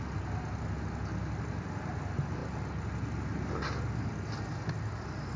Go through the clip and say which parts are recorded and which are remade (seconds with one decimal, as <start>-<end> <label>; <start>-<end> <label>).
0.0-5.4 recorded